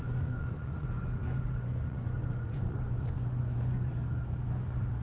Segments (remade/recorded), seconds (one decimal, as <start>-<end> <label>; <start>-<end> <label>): 0.0-3.9 remade; 3.9-4.5 recorded; 4.5-5.0 remade